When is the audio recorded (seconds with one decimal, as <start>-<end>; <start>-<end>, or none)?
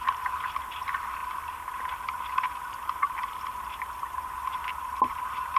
0.0-5.6